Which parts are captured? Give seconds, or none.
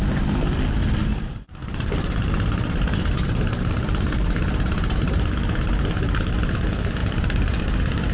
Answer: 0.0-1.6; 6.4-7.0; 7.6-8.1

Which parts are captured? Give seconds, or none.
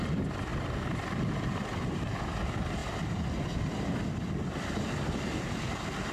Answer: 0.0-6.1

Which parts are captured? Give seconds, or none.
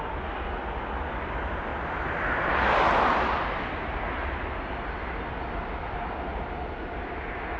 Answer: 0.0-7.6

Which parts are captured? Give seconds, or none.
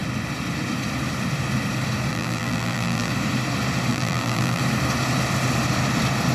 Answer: 0.0-2.1; 3.1-3.9; 4.6-6.3